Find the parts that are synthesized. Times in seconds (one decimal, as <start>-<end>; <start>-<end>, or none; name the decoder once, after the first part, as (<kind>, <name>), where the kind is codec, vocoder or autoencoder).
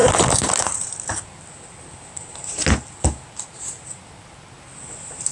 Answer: none